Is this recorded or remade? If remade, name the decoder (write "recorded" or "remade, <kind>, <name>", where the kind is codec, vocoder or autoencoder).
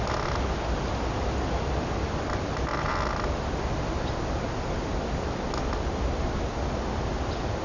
recorded